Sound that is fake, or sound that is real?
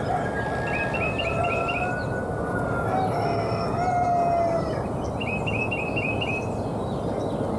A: real